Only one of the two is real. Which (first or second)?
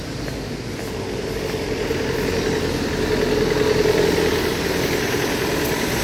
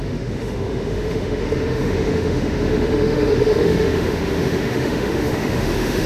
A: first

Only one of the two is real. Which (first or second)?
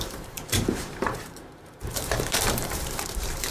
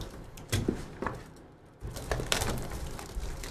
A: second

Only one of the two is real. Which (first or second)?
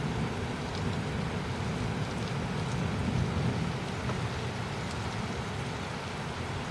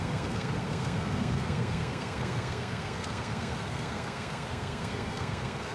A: first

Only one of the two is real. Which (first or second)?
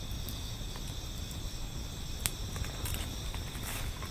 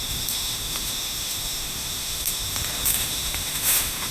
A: first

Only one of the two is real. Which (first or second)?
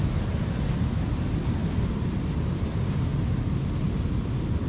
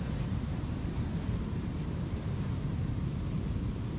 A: first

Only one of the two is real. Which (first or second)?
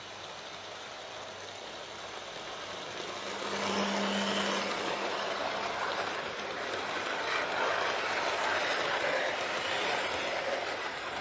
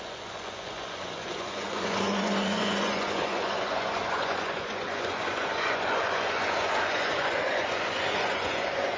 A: first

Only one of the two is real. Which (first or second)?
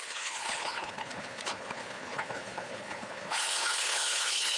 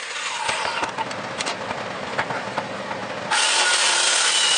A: second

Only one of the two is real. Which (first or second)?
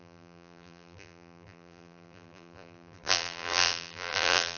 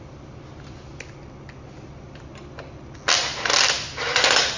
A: second